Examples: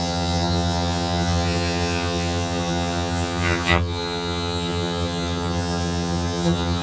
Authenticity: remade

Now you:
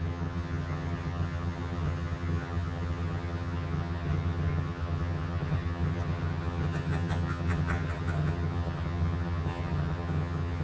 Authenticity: remade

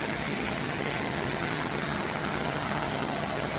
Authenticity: remade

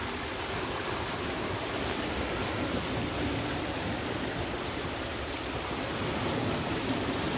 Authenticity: recorded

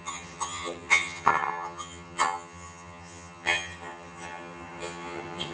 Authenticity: remade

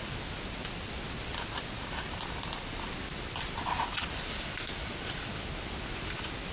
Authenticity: recorded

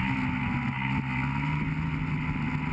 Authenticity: recorded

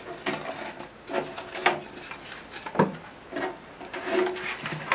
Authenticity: recorded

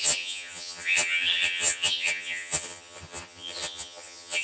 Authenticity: remade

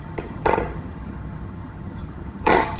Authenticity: remade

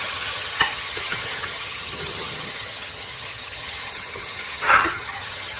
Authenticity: remade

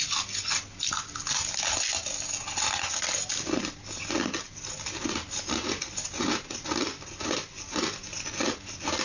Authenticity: recorded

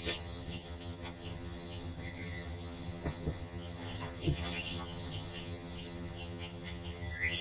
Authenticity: remade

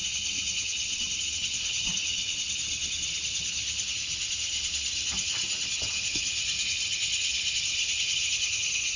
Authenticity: remade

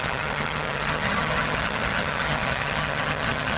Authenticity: remade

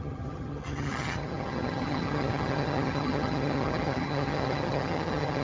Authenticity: remade